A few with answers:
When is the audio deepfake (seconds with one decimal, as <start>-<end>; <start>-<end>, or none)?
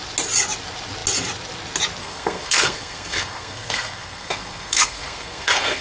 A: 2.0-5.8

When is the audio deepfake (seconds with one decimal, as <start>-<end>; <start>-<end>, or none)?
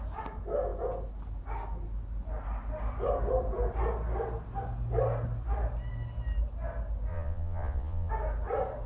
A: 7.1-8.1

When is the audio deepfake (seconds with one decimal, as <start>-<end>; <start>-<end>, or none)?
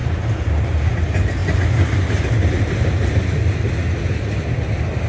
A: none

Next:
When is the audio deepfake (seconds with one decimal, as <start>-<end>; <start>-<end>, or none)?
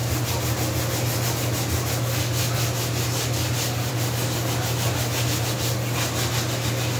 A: none